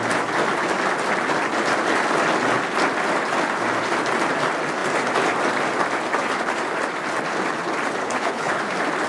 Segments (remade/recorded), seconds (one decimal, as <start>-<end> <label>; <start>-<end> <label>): 0.0-8.0 recorded; 8.0-8.6 remade; 8.6-9.1 recorded